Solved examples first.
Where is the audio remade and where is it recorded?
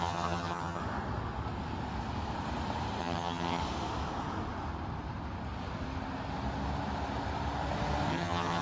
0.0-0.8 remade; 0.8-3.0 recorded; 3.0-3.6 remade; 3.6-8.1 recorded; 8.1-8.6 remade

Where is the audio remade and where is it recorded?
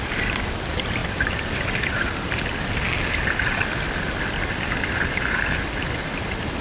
0.0-6.6 recorded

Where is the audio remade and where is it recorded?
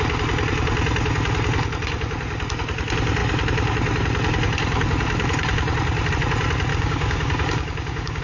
0.0-6.7 recorded; 6.7-8.2 remade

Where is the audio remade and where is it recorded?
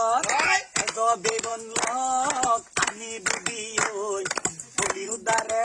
0.0-5.6 recorded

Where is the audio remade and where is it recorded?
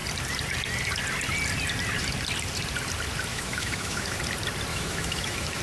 0.0-3.3 recorded; 3.3-4.2 remade; 4.2-4.7 recorded; 4.7-5.6 remade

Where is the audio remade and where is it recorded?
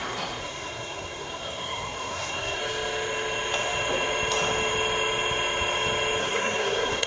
0.0-0.4 recorded; 0.4-2.6 remade; 2.6-6.2 recorded; 6.2-7.1 remade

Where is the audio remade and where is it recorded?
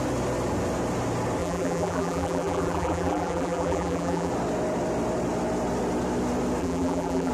0.0-1.4 recorded; 1.4-4.3 remade; 4.3-6.6 recorded; 6.6-7.3 remade